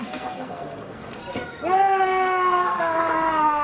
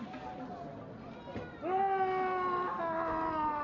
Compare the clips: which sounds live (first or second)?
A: second